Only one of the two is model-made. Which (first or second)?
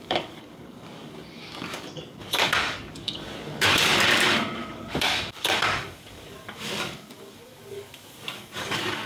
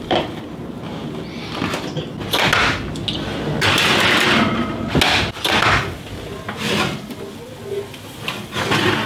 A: first